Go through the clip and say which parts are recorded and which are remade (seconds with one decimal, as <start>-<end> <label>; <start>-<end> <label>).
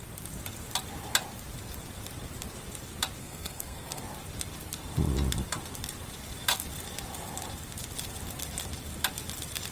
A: 0.0-3.2 recorded; 3.2-4.0 remade; 4.0-9.7 recorded